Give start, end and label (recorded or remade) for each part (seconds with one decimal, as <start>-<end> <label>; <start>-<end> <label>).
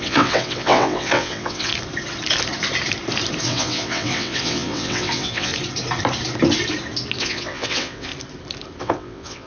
0.0-1.7 remade; 1.7-3.4 recorded; 3.4-5.5 remade; 5.5-7.2 recorded; 7.2-8.1 remade; 8.1-8.8 recorded; 8.8-9.5 remade